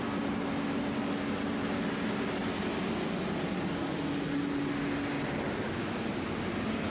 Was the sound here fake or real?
real